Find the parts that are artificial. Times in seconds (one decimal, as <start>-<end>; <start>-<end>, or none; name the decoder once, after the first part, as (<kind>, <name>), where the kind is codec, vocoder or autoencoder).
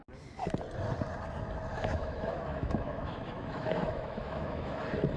1.7-4.8 (autoencoder, DAC-VAE)